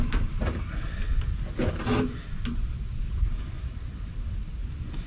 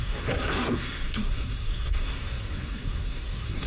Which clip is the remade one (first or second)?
second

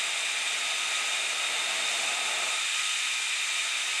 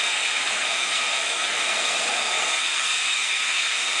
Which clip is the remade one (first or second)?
second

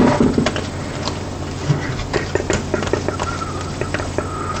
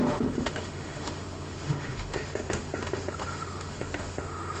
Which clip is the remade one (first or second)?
second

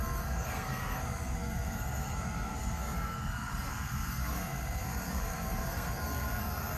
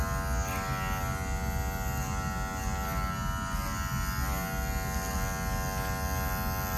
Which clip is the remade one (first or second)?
first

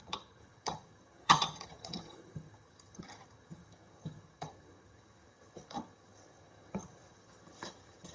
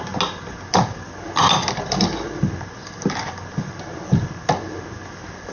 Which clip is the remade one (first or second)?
first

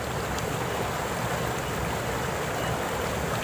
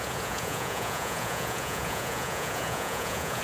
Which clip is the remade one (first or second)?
second